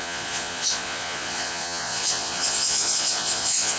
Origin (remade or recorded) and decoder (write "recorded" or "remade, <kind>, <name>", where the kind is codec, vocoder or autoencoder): remade, vocoder, Vocos